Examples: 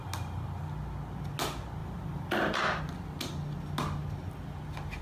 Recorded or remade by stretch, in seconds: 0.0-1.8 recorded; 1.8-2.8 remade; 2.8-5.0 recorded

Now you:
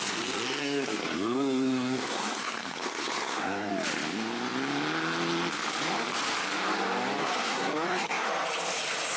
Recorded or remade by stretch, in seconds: 0.0-0.6 recorded; 0.6-3.7 remade; 3.7-7.2 recorded; 7.2-8.3 remade; 8.3-9.2 recorded

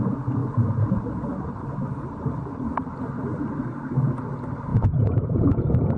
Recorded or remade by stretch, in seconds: 0.0-4.7 recorded; 4.7-6.0 remade

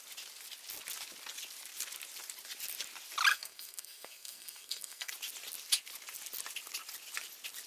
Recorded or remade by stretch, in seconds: 0.0-3.3 recorded; 3.3-5.1 remade; 5.1-7.7 recorded

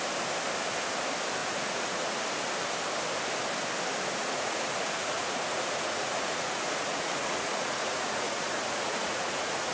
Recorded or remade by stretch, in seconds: 0.0-1.4 recorded; 1.4-2.2 remade; 2.2-4.2 recorded; 4.2-9.7 remade

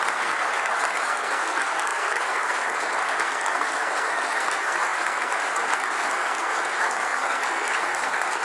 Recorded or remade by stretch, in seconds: 0.0-8.4 remade